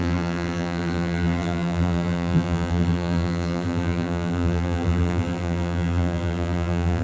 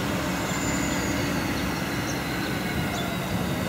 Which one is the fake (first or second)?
first